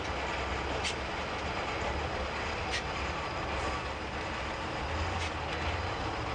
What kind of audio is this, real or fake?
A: real